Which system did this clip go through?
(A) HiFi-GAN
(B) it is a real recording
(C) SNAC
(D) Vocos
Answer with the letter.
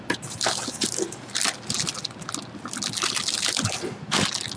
B